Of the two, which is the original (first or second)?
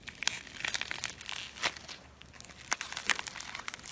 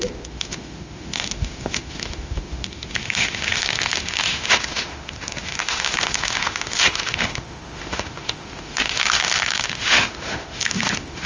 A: first